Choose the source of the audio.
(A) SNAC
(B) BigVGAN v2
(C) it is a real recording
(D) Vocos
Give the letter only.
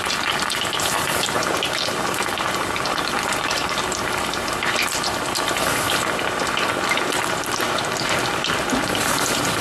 C